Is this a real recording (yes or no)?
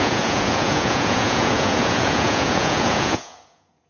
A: no